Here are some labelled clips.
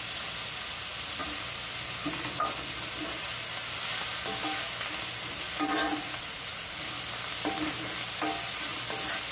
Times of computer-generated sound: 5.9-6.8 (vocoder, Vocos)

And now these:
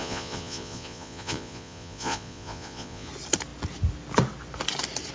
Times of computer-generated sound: 0.0-3.1 (vocoder, Vocos)

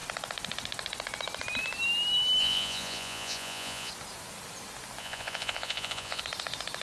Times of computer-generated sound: 2.4-3.9 (vocoder, Vocos); 5.0-6.2

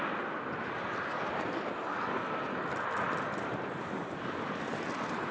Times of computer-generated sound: none

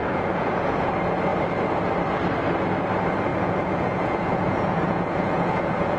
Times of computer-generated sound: 0.0-0.9 (vocoder, Vocos); 3.3-6.0